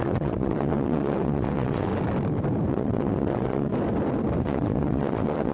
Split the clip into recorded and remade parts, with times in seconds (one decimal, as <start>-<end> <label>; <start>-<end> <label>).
0.0-1.9 remade; 1.9-2.7 recorded; 2.7-3.7 remade; 3.7-4.4 recorded; 4.4-5.5 remade